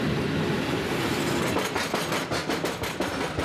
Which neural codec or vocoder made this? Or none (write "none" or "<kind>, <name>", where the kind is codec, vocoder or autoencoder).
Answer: none